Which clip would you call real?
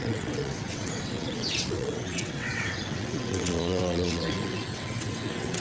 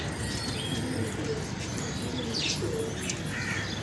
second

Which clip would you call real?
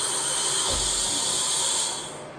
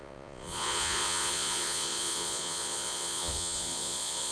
first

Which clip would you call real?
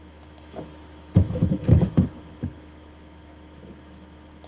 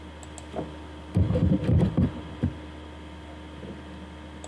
second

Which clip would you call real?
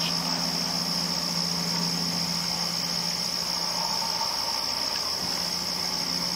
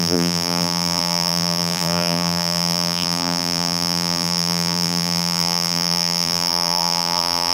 first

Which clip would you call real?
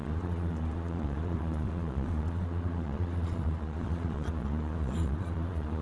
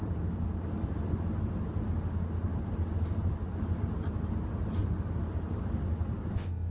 second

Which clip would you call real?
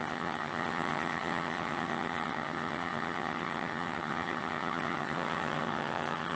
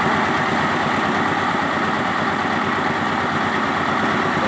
second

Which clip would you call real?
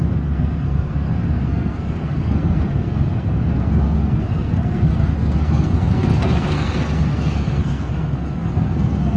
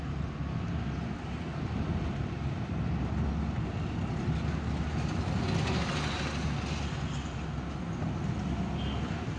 second